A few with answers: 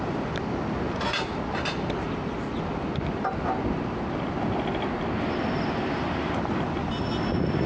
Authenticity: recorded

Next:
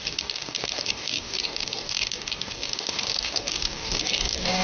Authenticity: remade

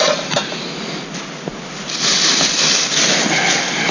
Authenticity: recorded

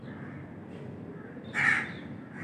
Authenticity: recorded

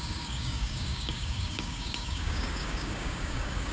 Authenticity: remade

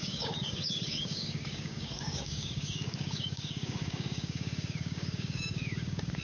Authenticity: remade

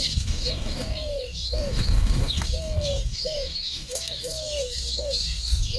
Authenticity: remade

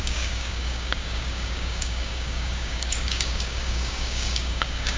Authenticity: remade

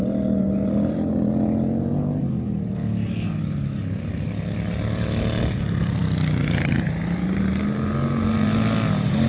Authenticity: recorded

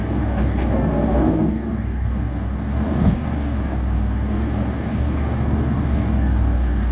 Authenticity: remade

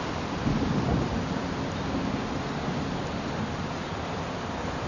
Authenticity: recorded